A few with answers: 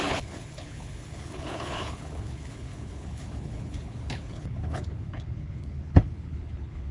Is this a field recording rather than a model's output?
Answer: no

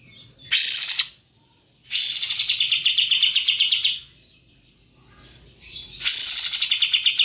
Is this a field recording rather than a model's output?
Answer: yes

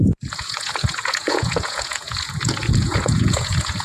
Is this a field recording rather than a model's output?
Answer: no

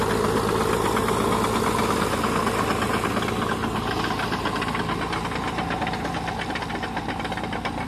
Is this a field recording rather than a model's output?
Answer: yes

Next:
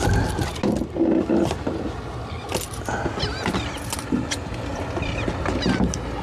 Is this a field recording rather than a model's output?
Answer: yes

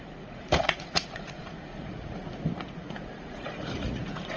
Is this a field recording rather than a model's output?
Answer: no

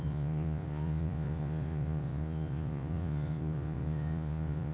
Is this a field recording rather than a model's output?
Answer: no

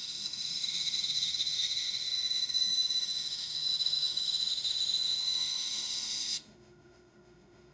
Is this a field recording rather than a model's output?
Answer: no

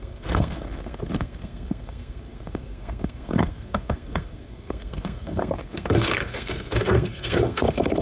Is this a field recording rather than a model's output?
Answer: no